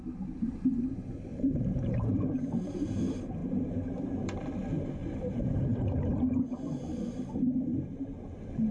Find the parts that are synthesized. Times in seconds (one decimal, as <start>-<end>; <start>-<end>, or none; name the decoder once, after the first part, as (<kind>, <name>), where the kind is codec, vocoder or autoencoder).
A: 1.3-3.0 (vocoder, BigVGAN v2); 3.4-4.4; 5.0-5.6